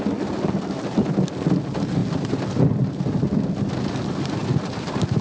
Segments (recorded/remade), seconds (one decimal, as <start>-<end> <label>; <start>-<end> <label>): 0.0-5.2 recorded

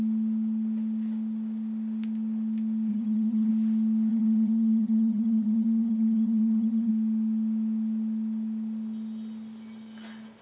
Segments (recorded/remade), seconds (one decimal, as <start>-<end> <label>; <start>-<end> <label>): 0.0-2.9 recorded; 2.9-3.5 remade; 3.5-4.1 recorded; 4.1-6.9 remade; 6.9-10.4 recorded

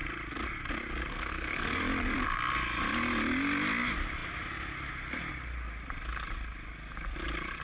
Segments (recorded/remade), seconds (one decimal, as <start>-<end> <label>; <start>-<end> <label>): 0.0-1.1 recorded; 1.1-1.8 remade; 1.8-7.6 recorded

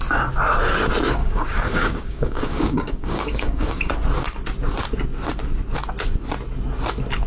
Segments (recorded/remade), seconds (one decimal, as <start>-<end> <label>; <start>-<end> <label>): 0.0-1.2 recorded; 1.2-3.9 remade; 3.9-7.3 recorded

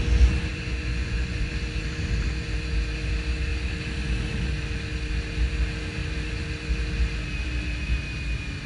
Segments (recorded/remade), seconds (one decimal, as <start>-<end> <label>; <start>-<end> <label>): 0.0-0.5 recorded; 0.5-1.5 remade; 1.5-8.7 recorded

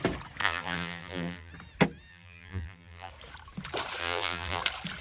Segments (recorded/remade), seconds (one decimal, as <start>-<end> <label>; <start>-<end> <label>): 0.0-0.4 recorded; 0.4-1.5 remade; 1.5-2.1 recorded; 2.1-3.1 remade; 3.1-4.0 recorded; 4.0-4.6 remade; 4.6-5.0 recorded